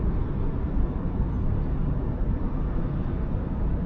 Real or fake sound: real